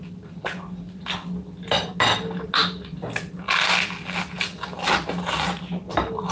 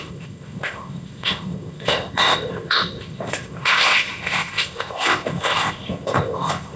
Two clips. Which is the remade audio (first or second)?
second